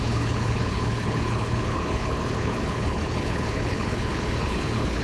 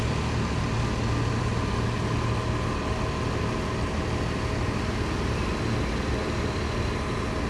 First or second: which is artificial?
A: first